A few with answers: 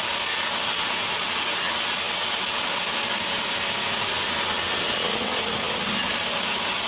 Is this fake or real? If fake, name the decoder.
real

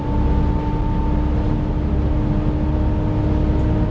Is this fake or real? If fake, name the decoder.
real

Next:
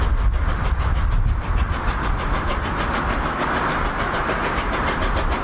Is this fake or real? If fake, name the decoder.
real